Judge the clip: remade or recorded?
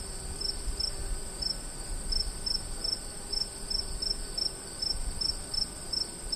recorded